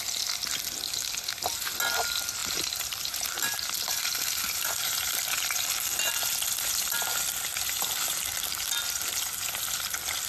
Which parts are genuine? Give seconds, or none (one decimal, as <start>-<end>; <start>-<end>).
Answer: 0.0-2.4; 5.3-10.3